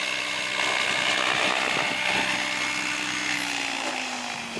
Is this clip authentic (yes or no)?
yes